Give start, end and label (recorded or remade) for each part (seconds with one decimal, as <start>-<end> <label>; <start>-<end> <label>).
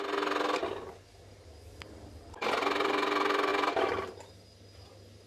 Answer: 0.0-5.3 recorded